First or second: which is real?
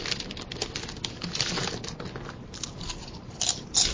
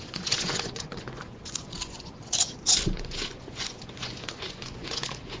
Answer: first